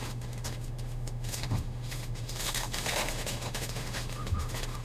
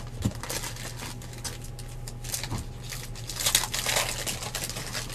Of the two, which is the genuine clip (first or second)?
second